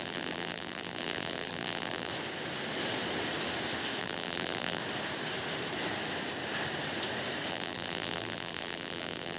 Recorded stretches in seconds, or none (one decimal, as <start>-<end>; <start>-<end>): 2.1-4.0; 4.8-7.5